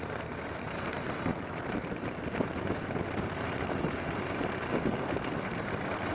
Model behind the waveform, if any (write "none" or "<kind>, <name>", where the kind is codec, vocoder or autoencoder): vocoder, BigVGAN v2